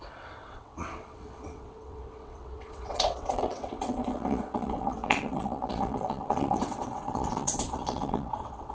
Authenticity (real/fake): fake